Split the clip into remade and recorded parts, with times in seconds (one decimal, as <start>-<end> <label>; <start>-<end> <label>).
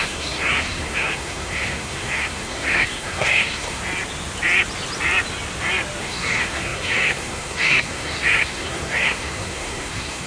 0.0-3.8 remade; 3.8-6.0 recorded; 6.0-10.3 remade